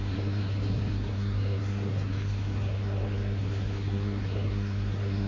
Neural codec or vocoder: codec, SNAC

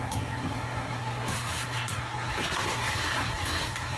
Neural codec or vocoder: codec, SNAC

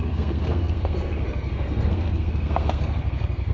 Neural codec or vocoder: codec, SNAC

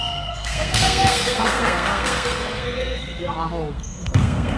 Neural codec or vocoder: codec, SNAC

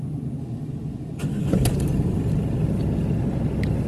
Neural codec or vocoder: none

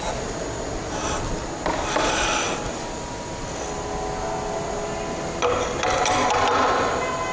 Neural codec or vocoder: none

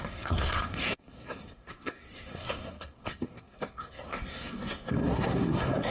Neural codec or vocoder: codec, SNAC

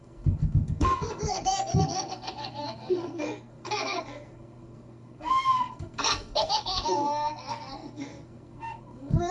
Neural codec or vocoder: codec, SNAC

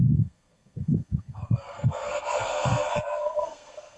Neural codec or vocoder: codec, SNAC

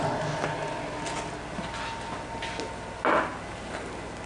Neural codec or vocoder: none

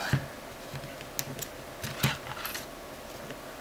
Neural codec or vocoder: none